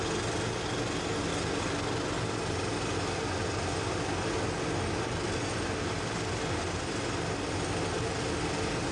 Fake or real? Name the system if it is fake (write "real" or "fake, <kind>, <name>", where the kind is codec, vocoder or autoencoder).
real